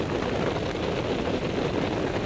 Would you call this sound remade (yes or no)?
no